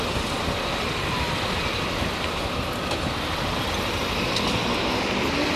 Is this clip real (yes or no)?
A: yes